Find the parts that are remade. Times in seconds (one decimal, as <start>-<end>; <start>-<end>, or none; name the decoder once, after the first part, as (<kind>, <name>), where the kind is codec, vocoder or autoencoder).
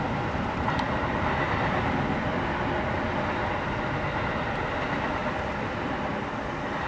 none